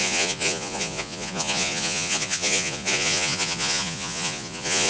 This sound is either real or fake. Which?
fake